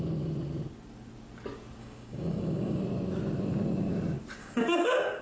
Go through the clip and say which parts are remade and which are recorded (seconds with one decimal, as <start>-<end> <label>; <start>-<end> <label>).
0.0-1.8 recorded; 1.8-2.8 remade; 2.8-4.4 recorded; 4.4-5.2 remade